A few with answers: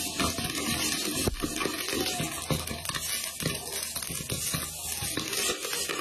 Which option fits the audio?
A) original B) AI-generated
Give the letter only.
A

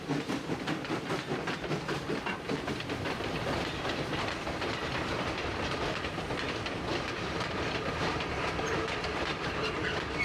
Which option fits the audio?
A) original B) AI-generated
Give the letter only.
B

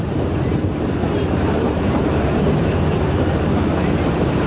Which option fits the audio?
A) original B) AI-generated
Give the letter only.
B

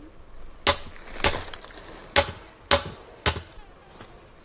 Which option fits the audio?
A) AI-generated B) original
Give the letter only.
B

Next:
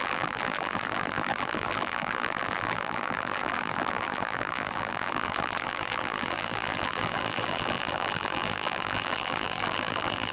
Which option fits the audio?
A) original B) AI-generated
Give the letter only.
B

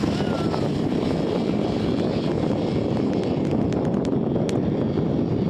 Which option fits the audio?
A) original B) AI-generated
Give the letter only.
A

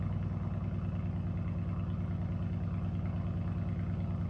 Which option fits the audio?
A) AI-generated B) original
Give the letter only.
B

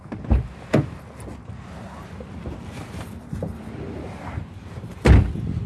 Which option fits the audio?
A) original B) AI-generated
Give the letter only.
A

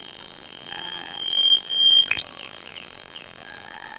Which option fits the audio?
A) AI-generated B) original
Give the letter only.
A